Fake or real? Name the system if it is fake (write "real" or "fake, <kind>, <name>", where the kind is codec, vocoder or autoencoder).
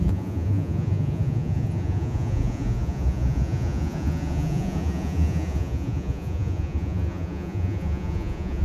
fake, vocoder, Vocos